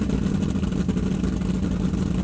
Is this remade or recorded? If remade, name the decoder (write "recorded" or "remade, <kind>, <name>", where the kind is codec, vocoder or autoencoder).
recorded